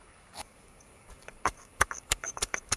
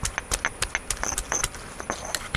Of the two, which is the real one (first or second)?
second